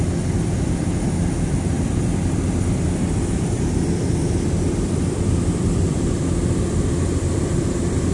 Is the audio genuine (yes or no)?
no